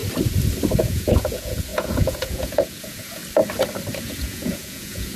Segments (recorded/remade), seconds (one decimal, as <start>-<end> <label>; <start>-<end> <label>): 0.0-0.8 recorded; 0.8-3.2 remade; 3.2-4.0 recorded; 4.0-5.2 remade